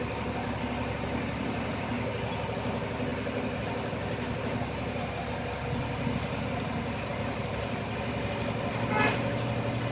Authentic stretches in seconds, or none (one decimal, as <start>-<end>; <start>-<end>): 0.0-9.9